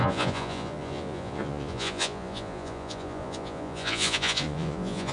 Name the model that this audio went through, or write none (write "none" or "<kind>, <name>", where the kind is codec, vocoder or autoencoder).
vocoder, Vocos